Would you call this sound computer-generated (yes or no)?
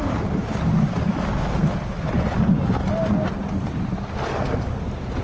no